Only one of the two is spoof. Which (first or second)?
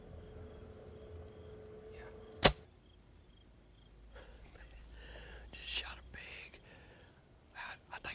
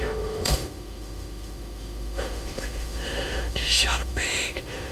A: second